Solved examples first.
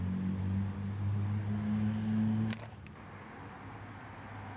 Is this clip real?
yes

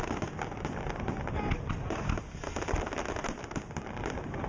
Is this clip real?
yes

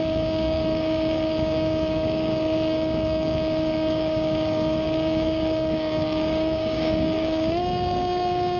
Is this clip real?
no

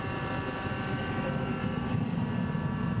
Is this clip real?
yes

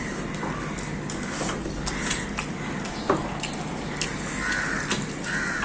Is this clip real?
yes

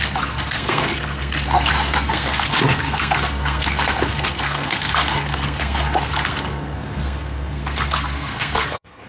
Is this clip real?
no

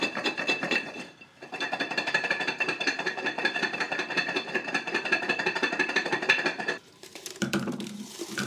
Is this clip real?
no